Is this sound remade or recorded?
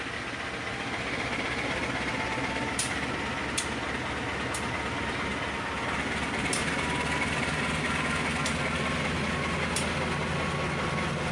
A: recorded